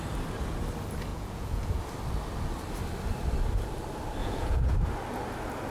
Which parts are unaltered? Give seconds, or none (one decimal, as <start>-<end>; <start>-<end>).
0.0-1.1; 1.8-4.2; 4.7-5.7